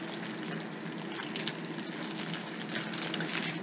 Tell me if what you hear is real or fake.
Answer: real